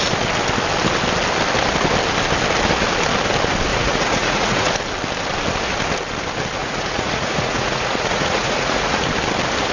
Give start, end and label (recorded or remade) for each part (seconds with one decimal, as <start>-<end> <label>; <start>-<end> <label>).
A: 0.0-3.7 recorded; 3.7-4.7 remade; 4.7-6.6 recorded; 6.6-9.1 remade; 9.1-9.7 recorded